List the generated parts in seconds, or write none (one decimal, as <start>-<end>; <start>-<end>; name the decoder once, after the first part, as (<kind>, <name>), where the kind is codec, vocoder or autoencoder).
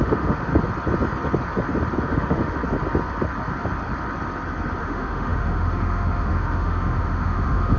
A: 0.0-0.5 (autoencoder, DAC-VAE); 2.0-2.6; 4.8-7.8